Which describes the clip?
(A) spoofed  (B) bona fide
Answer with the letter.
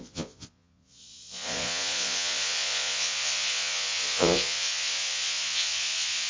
A